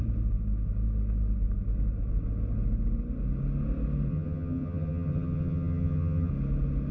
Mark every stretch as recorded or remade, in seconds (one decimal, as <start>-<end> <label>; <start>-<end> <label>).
0.0-4.1 recorded; 4.1-6.3 remade; 6.3-6.9 recorded